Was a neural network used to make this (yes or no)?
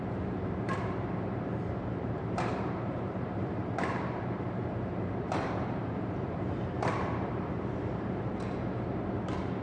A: yes